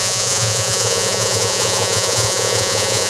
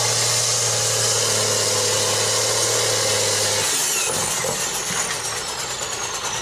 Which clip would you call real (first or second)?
second